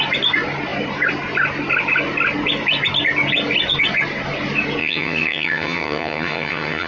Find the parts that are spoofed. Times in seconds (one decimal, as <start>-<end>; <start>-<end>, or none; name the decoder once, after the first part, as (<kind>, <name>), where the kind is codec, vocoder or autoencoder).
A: 4.8-6.9 (vocoder, HiFi-GAN)